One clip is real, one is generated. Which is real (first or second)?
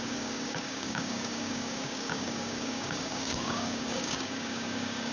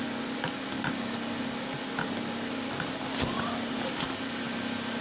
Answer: second